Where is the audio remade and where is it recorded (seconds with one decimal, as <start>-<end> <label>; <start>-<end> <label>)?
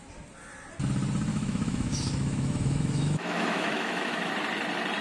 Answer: 0.0-1.3 recorded; 1.3-4.3 remade; 4.3-5.0 recorded